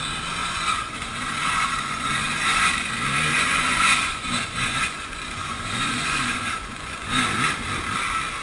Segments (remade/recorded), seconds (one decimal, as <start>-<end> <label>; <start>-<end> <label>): 0.0-0.4 recorded; 0.4-2.9 remade; 2.9-3.3 recorded; 3.3-7.2 remade; 7.2-8.4 recorded